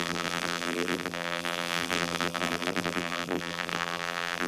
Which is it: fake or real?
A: fake